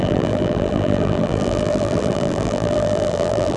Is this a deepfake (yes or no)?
yes